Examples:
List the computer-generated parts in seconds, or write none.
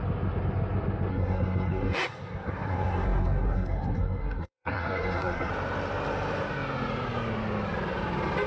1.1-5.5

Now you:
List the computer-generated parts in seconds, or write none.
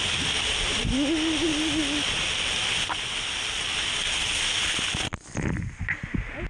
none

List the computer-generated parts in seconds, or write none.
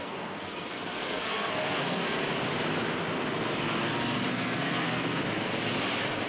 0.0-2.2; 4.3-5.2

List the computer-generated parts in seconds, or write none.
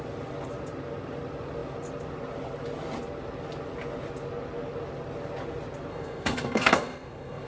5.9-7.5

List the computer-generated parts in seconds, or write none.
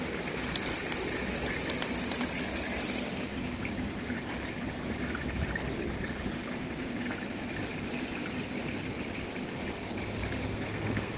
10.5-11.2